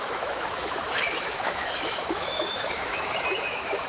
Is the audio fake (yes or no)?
yes